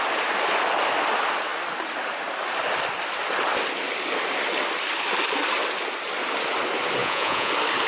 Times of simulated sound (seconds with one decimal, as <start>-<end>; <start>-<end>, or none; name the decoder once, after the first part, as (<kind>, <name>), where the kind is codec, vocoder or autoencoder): 7.0-7.5 (vocoder, Vocos)